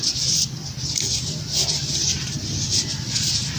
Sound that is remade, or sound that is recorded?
recorded